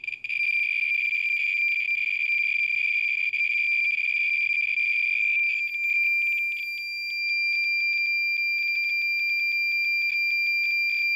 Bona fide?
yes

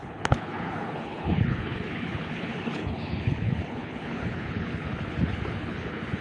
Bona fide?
no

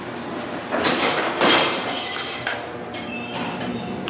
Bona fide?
no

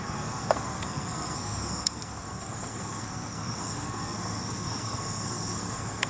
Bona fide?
no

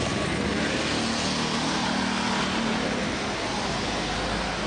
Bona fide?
yes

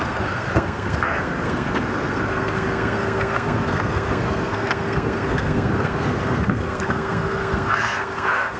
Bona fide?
no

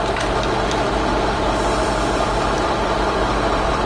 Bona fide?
no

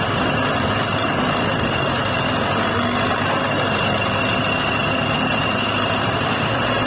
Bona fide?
yes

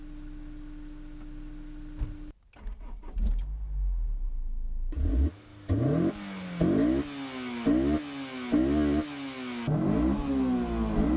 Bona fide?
yes